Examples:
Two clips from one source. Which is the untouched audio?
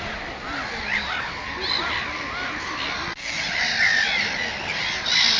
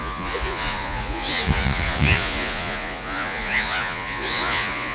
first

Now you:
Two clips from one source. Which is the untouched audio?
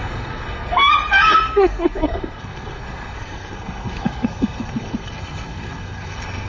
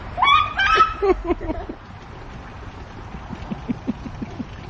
second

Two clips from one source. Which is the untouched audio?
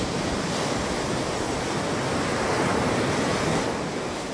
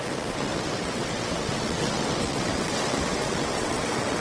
first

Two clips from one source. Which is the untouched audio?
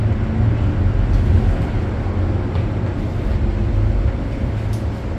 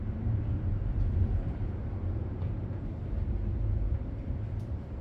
first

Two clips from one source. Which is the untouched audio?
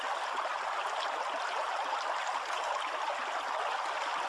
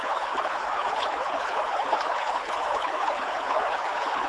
first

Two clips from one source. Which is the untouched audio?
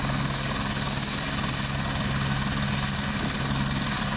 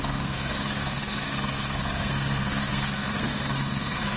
first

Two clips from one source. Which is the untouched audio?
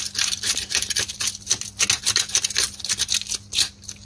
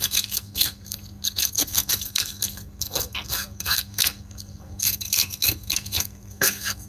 first